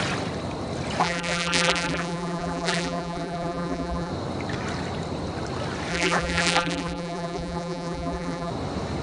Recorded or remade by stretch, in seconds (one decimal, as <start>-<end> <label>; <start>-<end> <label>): 0.0-1.0 recorded; 1.0-4.1 remade; 4.1-5.9 recorded; 5.9-8.5 remade; 8.5-9.0 recorded